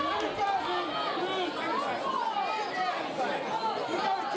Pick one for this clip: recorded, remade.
recorded